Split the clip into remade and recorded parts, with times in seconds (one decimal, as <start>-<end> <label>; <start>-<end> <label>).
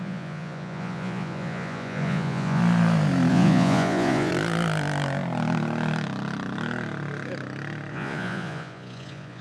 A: 0.0-2.6 remade; 2.6-3.3 recorded; 3.3-4.3 remade; 4.3-7.9 recorded; 7.9-9.4 remade